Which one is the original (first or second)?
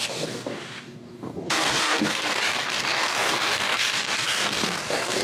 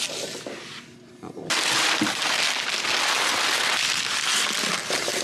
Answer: second